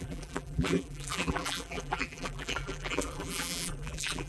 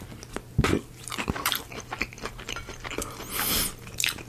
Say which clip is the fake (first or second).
first